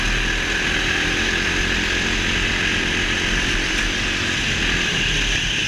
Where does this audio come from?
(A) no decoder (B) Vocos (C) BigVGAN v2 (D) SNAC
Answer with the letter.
A